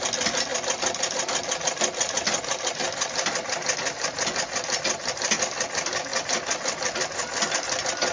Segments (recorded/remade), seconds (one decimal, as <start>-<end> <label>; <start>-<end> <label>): 0.0-8.1 recorded